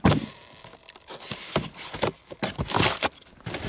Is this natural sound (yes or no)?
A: yes